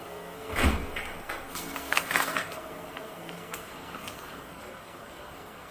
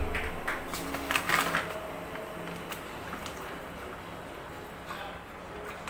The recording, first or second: second